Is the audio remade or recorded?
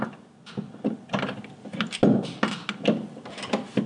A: recorded